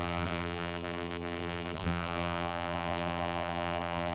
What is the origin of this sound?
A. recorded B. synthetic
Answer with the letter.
B